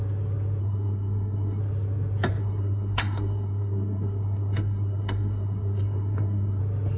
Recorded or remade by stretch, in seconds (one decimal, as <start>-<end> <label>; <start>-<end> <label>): 0.0-0.6 recorded; 0.6-1.6 remade; 1.6-2.4 recorded; 2.4-6.6 remade; 6.6-7.0 recorded